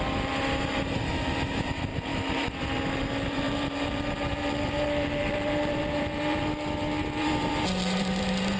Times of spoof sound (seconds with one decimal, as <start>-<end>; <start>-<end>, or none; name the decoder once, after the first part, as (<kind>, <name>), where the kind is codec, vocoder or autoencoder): 0.0-6.5 (vocoder, BigVGAN v2); 7.2-8.6